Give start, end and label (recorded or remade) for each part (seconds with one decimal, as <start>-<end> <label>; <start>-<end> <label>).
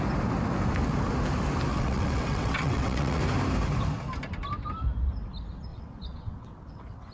0.0-1.7 recorded; 1.7-3.2 remade; 3.2-5.7 recorded; 5.7-7.1 remade